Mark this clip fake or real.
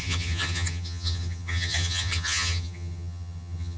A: fake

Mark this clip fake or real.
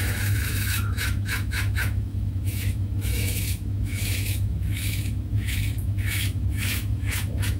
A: fake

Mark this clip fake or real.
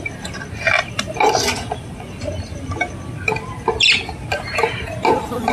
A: real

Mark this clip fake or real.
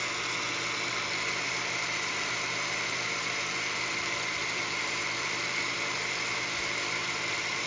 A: fake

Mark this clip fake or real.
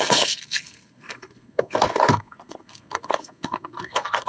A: fake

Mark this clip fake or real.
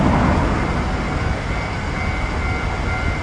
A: real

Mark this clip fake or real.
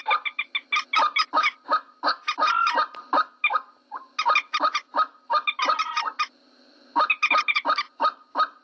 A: real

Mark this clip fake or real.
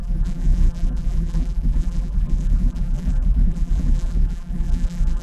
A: fake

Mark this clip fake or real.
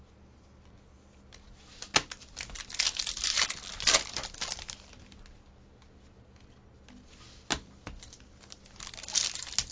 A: real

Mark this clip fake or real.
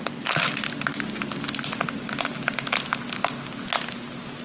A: real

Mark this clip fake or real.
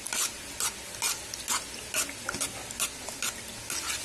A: real